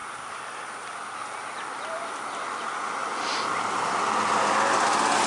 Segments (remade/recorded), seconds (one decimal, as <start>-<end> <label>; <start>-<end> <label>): 0.0-5.3 recorded